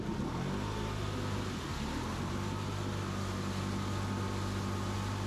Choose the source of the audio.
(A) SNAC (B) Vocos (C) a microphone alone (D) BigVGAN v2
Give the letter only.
C